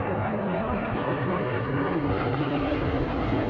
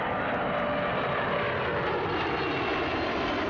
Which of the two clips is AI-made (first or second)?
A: first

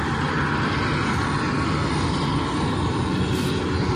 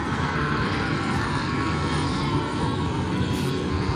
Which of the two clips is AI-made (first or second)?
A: second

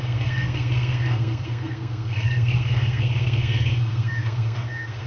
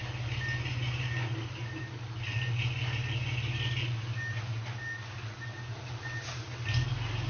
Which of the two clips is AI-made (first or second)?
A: first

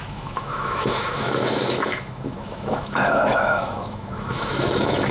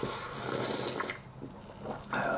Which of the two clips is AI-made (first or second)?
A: first